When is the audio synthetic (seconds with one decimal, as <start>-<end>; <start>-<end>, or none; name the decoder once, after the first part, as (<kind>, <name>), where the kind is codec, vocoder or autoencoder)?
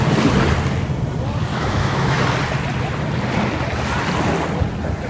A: 1.5-2.2 (autoencoder, DAC-VAE)